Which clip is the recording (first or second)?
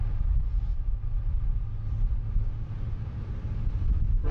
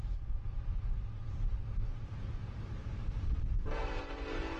first